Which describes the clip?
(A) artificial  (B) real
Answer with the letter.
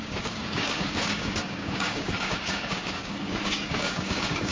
A